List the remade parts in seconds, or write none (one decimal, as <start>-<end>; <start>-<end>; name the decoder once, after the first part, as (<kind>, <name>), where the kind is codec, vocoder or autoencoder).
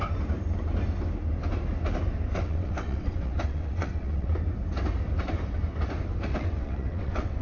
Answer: 2.3-4.3 (vocoder, WaveNeXt); 6.3-7.4